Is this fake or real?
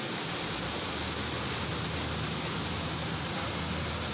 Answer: real